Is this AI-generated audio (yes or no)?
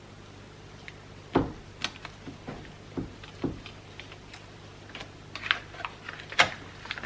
no